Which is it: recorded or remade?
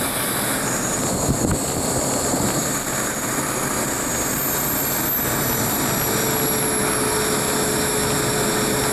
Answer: recorded